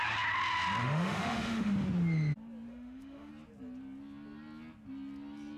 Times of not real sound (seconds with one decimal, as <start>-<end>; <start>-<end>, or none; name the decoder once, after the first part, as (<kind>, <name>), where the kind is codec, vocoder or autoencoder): 0.8-1.7 (autoencoder, DAC-VAE); 2.7-3.3